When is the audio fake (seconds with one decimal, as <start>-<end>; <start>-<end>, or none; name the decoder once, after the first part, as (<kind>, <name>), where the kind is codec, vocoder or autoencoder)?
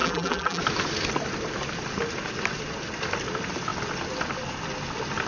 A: 0.0-0.6 (vocoder, BigVGAN v2)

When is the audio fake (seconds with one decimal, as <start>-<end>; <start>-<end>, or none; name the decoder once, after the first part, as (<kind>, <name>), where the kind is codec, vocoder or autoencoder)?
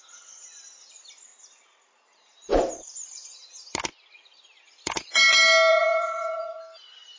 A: 5.7-6.6 (vocoder, Vocos)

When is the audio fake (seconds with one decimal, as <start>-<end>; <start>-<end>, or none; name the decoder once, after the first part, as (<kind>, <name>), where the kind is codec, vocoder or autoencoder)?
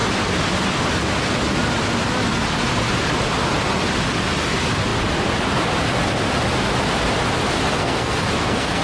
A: 7.8-8.8 (codec, SNAC)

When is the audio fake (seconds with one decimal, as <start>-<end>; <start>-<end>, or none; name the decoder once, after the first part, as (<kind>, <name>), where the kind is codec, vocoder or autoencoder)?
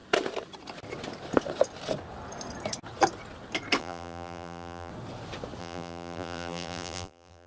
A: 3.8-4.9 (vocoder, BigVGAN v2); 5.6-7.5